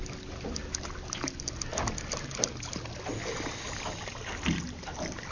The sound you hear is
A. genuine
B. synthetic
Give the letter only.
A